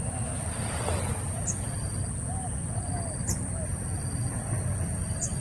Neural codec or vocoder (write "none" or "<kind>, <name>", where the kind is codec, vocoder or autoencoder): none